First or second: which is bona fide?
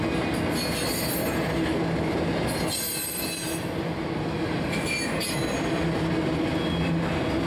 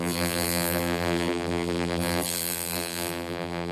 first